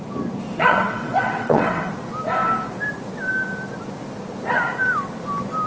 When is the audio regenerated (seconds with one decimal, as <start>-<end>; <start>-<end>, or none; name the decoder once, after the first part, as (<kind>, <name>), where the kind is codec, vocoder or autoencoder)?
0.5-1.9 (vocoder, WaveNeXt)